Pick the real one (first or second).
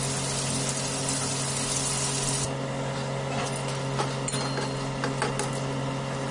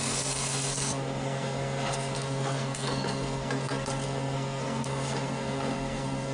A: first